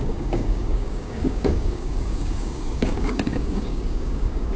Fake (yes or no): yes